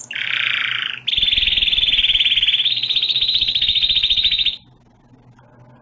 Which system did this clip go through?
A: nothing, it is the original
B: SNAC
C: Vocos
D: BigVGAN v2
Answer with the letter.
A